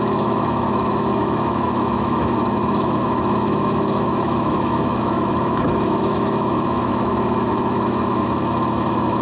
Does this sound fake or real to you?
fake